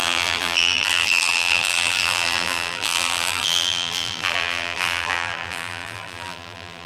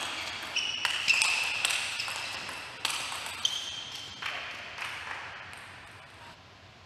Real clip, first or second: second